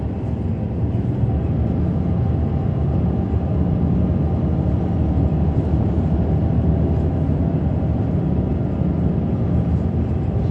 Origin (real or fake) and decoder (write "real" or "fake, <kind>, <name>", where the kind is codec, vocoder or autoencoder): real